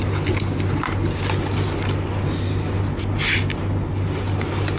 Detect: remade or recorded recorded